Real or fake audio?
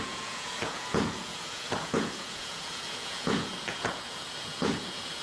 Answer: fake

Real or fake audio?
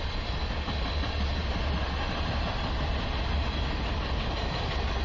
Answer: real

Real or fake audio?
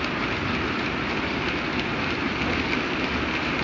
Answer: real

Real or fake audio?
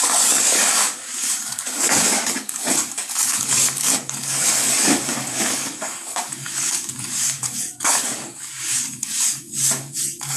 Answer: fake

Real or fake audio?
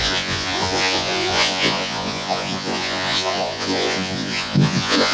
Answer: fake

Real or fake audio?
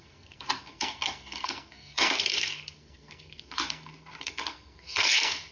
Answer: fake